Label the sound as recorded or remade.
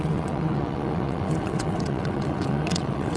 remade